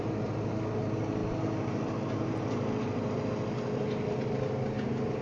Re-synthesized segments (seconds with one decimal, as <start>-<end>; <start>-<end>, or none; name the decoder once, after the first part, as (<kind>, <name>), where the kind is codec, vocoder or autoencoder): 1.2-4.3 (vocoder, BigVGAN v2)